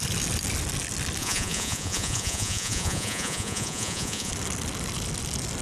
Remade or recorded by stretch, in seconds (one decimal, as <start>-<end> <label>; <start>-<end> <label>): 0.0-1.2 recorded; 1.2-4.3 remade; 4.3-5.6 recorded